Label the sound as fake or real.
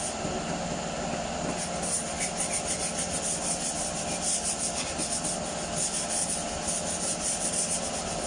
real